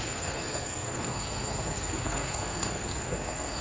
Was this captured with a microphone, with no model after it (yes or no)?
no